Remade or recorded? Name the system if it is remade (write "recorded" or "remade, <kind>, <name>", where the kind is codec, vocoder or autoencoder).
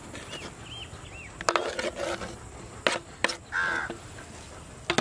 recorded